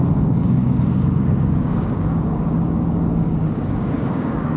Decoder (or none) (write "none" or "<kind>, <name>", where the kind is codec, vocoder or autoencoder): codec, DAC